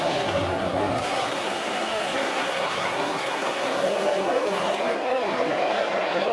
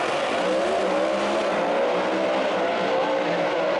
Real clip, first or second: second